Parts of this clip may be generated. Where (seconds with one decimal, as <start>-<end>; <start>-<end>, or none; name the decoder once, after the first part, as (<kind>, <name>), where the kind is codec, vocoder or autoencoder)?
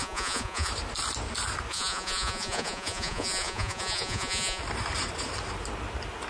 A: 0.0-0.7 (vocoder, Vocos); 1.7-4.6